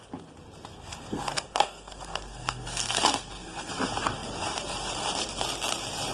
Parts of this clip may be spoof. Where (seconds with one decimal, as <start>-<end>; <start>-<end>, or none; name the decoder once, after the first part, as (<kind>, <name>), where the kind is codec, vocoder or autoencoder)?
0.7-3.7 (codec, SNAC)